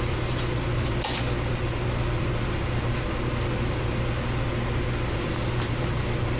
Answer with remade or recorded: recorded